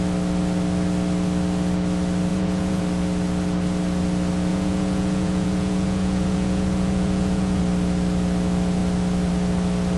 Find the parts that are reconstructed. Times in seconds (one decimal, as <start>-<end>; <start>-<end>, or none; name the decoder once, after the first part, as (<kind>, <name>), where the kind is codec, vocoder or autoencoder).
2.3-2.8 (vocoder, Vocos); 4.5-7.6

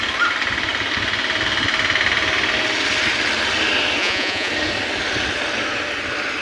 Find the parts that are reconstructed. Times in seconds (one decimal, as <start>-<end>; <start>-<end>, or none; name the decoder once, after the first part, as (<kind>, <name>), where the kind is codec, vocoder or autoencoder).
4.0-4.5 (vocoder, Vocos)

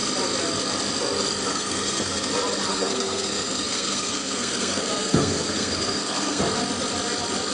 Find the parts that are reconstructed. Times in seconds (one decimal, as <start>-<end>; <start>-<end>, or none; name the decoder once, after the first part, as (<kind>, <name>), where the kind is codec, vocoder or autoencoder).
1.5-2.3 (codec, SNAC); 2.7-6.4

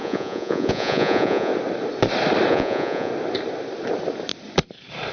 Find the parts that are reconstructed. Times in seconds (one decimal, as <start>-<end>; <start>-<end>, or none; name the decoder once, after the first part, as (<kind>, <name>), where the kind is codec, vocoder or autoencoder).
0.0-1.5 (vocoder, Vocos); 2.5-3.1

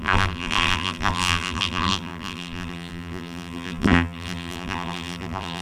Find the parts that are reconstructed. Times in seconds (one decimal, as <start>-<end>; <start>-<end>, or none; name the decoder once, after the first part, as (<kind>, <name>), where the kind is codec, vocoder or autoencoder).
0.0-5.6 (vocoder, BigVGAN v2)

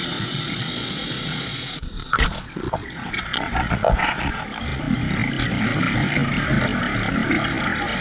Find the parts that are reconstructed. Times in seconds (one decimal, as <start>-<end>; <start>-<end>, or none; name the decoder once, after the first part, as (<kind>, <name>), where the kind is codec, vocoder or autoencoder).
0.0-4.4 (vocoder, Vocos)